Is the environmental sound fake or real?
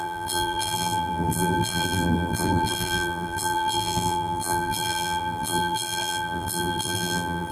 fake